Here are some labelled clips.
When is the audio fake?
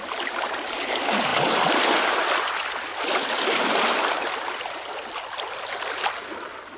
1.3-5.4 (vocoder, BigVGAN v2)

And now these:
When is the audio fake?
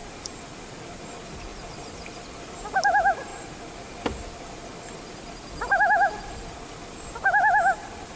none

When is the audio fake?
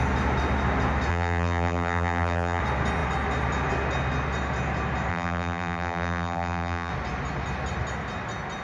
1.1-2.6 (vocoder, BigVGAN v2); 5.1-6.9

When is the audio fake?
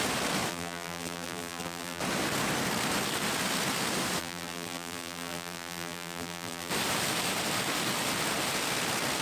0.5-2.0 (vocoder, BigVGAN v2); 4.2-6.7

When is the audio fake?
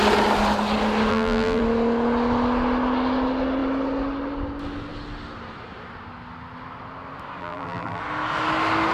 1.1-1.6 (vocoder, BigVGAN v2); 7.4-8.0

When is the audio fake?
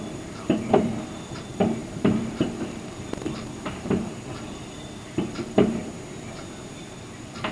0.0-5.8 (vocoder, BigVGAN v2); 6.8-7.5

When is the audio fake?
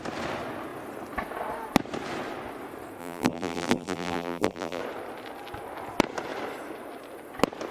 3.0-4.8 (vocoder, BigVGAN v2)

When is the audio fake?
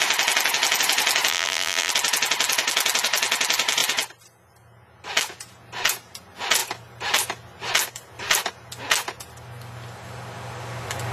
1.3-1.9 (vocoder, BigVGAN v2)